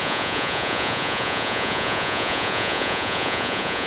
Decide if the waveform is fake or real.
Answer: fake